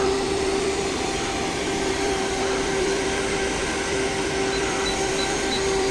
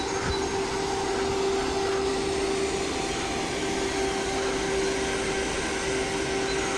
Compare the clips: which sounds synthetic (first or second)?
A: first